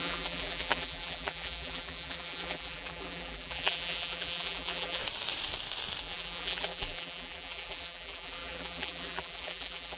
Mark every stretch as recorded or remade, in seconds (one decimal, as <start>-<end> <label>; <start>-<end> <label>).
0.0-5.0 remade; 5.0-6.0 recorded; 6.0-10.0 remade